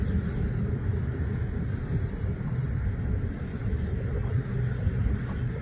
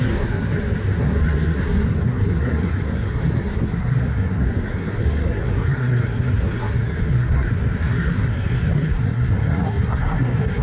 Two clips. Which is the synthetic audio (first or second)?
second